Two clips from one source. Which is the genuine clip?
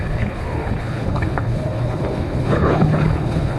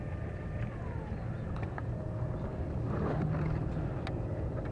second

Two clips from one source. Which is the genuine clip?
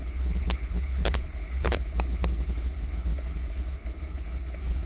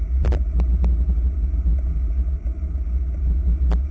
second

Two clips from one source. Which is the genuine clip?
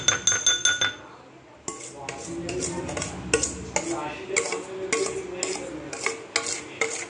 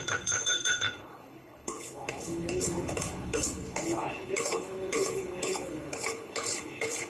first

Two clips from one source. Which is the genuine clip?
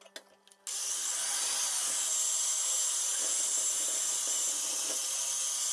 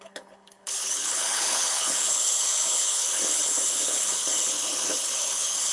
first